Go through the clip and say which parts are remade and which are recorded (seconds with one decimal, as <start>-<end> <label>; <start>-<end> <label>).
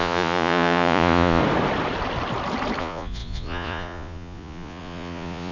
0.0-1.4 remade; 1.4-2.8 recorded; 2.8-5.5 remade